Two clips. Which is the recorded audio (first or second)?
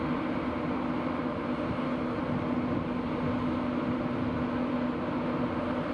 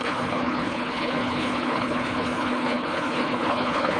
first